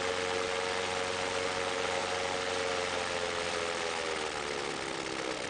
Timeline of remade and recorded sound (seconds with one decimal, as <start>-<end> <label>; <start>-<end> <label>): 0.0-5.5 recorded